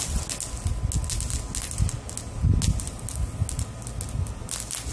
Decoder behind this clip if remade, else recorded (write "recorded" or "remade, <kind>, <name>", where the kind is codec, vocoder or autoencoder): recorded